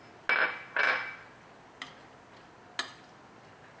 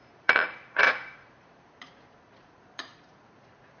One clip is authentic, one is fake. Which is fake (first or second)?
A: second